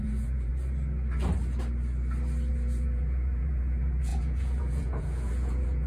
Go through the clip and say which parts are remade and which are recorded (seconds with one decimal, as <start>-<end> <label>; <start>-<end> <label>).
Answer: 0.0-0.5 remade; 0.5-2.5 recorded; 2.5-5.9 remade